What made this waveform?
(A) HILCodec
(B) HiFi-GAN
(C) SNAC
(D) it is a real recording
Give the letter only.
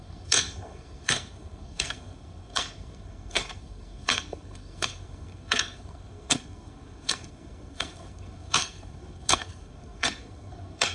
C